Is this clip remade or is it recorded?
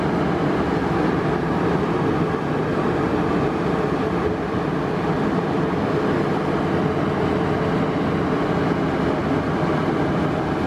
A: recorded